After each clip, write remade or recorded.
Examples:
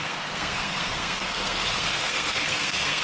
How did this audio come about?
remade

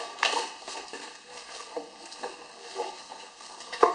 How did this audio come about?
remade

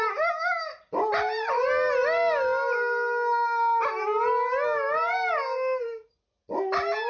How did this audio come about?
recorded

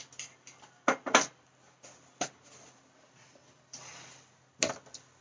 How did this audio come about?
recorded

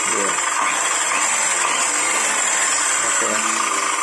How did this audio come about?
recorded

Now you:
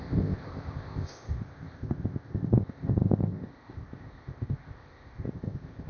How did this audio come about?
remade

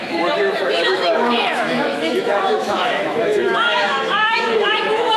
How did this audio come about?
remade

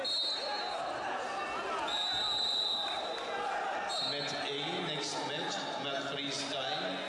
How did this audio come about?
recorded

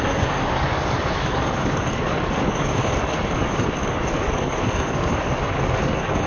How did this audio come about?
remade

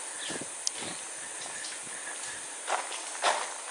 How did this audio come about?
recorded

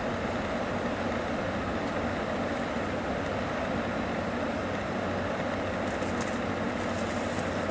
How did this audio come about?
recorded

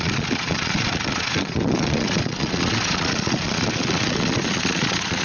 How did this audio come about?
remade